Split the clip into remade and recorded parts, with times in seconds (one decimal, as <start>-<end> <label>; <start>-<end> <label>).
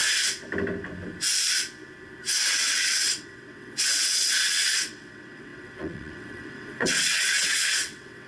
0.0-2.5 recorded; 2.5-8.3 remade